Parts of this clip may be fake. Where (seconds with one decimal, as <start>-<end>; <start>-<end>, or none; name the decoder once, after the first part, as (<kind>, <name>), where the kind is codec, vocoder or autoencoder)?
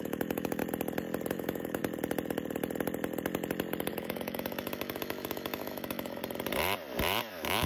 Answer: 0.0-0.6 (autoencoder, DAC-VAE); 1.3-1.8; 3.9-6.2; 7.3-7.7